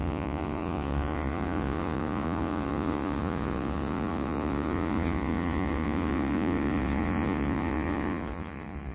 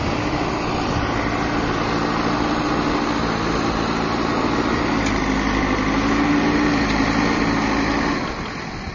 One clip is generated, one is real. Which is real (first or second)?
second